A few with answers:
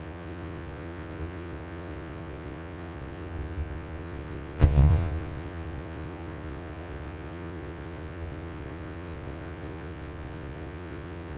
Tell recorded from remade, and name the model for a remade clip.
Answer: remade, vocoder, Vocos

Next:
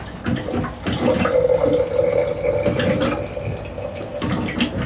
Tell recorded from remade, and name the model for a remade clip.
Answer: recorded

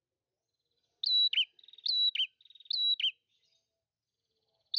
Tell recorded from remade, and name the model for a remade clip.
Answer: recorded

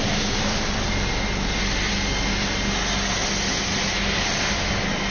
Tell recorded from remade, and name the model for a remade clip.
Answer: recorded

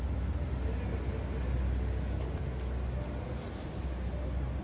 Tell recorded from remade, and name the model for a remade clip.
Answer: recorded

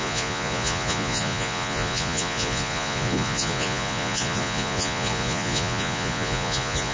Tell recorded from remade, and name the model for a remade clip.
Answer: remade, vocoder, Vocos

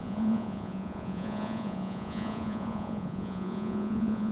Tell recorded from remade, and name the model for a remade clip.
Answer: remade, vocoder, Vocos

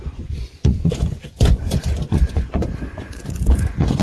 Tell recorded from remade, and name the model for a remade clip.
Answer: remade, vocoder, Vocos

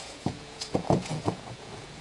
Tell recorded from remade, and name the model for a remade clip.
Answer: remade, vocoder, Vocos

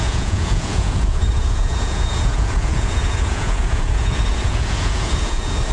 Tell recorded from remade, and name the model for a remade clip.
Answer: remade, vocoder, Vocos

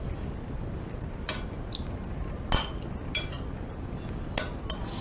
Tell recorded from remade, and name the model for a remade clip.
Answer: recorded